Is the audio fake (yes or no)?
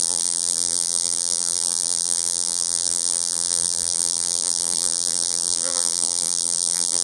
yes